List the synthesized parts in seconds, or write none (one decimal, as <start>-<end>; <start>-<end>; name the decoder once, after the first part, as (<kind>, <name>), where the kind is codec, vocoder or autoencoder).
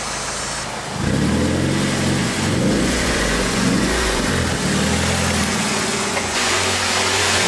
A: 2.2-4.3 (vocoder, Vocos); 5.5-7.5